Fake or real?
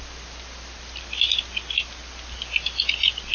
real